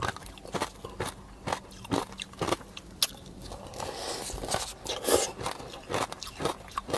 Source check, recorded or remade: recorded